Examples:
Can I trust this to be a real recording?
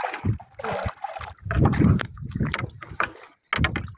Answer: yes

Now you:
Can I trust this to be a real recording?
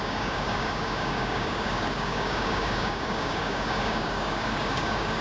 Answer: no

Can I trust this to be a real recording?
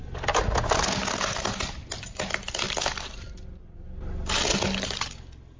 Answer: yes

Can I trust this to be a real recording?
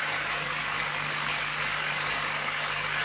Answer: no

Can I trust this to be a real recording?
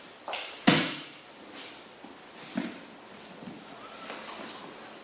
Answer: yes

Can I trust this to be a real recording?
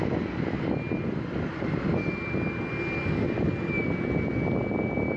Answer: yes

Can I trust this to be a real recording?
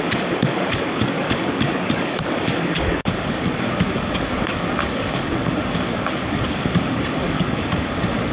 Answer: no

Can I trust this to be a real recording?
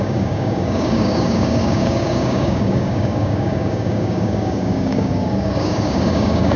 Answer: no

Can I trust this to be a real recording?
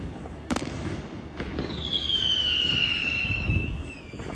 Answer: no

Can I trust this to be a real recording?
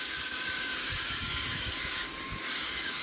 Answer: no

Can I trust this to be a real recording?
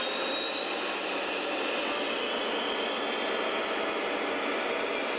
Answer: yes